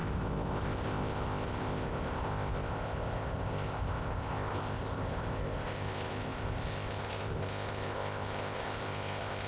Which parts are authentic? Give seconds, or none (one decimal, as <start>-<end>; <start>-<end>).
none